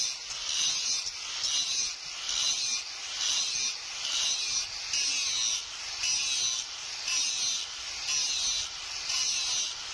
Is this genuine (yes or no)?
yes